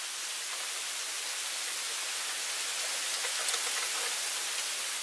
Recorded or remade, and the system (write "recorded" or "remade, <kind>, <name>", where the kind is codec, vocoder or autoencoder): recorded